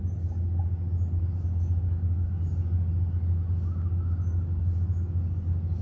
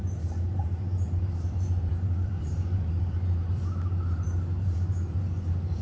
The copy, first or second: second